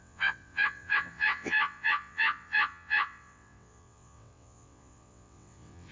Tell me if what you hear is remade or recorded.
remade